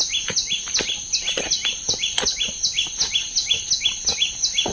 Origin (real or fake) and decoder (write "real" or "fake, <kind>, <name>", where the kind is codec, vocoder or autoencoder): real